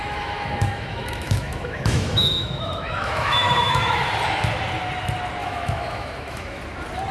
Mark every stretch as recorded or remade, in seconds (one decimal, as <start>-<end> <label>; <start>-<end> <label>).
0.0-4.1 remade; 4.1-5.4 recorded; 5.4-6.6 remade; 6.6-7.1 recorded